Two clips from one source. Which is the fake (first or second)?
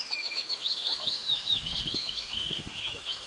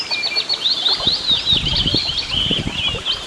first